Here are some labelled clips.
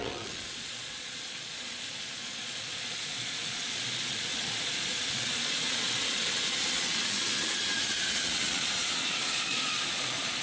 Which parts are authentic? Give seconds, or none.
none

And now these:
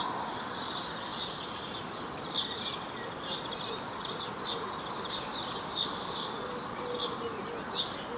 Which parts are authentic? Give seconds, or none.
0.0-8.2

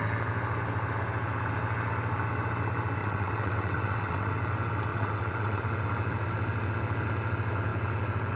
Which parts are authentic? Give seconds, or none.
0.0-3.0; 4.3-4.9; 5.6-8.3

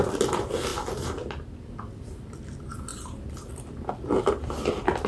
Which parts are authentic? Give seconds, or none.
0.0-5.1

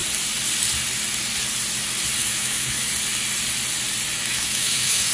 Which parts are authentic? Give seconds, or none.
0.0-2.2; 2.9-4.2

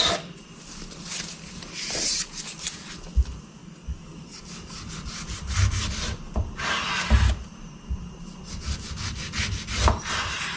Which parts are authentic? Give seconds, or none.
0.0-3.6; 4.9-10.6